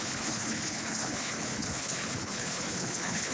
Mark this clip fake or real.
fake